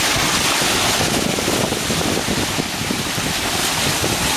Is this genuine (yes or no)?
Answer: no